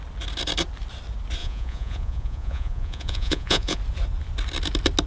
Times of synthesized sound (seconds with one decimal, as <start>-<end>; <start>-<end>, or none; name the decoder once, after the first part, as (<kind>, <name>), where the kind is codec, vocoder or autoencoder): 1.4-3.8 (vocoder, Vocos)